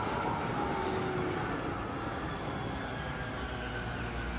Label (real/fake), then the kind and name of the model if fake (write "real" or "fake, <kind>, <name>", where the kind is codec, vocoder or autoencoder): real